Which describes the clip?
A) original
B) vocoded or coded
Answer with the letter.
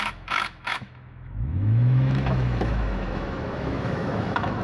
B